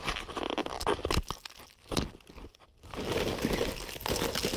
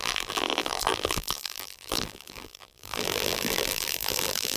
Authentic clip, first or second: first